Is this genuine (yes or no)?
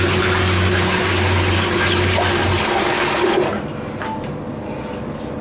yes